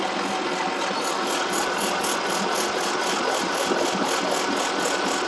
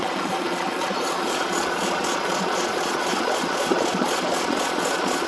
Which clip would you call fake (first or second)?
second